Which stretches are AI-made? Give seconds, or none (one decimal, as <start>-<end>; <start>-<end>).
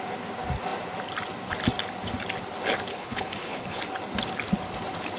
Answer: 2.9-3.8